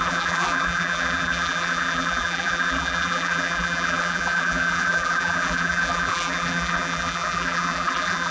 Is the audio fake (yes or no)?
yes